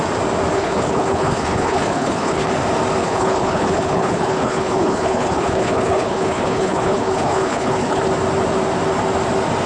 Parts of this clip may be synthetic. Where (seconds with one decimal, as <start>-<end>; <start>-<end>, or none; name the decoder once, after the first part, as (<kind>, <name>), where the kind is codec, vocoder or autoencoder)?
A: 0.5-2.5 (codec, HILCodec); 3.0-8.0